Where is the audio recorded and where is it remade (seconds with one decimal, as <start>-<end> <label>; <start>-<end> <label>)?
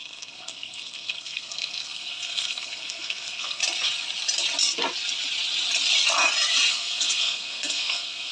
0.0-3.6 remade; 3.6-6.7 recorded; 6.7-8.3 remade